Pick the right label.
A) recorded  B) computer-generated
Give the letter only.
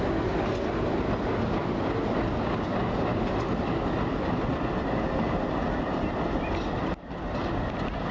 A